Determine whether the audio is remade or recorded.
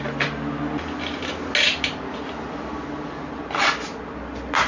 recorded